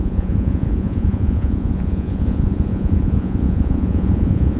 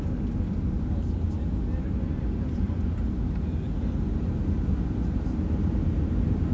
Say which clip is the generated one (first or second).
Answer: first